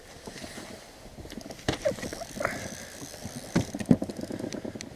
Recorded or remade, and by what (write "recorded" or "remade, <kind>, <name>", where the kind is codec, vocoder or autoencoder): recorded